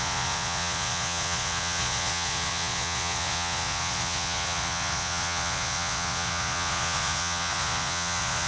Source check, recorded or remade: remade